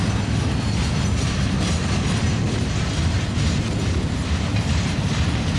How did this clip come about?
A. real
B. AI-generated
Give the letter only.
A